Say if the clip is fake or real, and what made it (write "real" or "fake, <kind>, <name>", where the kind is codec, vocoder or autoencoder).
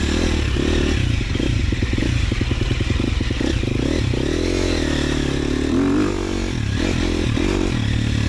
real